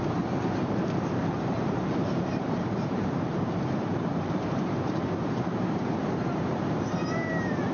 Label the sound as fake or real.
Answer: fake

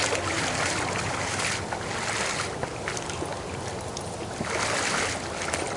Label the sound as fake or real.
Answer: real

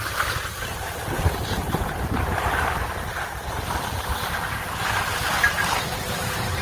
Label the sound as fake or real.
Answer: fake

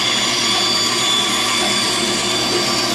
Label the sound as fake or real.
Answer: real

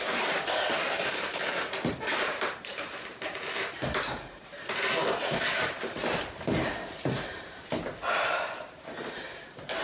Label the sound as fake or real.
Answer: fake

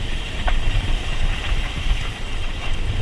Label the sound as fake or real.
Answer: fake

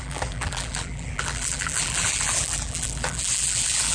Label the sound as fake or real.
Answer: fake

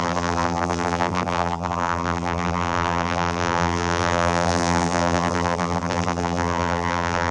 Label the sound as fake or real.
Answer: fake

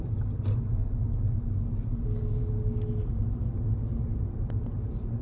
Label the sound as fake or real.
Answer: real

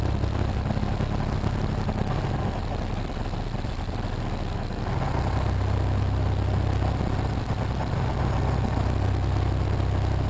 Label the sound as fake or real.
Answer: real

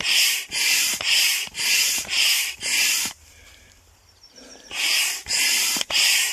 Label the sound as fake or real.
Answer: fake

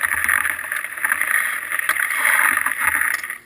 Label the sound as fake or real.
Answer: fake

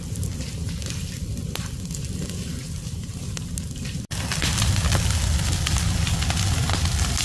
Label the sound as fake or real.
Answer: fake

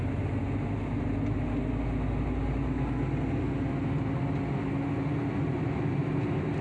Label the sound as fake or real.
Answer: real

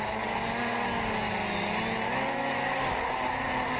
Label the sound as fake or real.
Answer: real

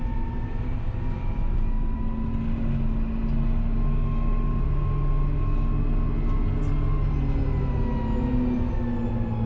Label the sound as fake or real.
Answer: real